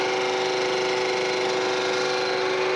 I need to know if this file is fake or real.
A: real